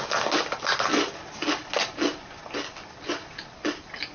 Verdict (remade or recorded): recorded